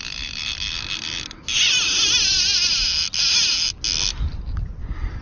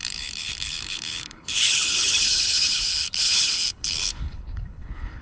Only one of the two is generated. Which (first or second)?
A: second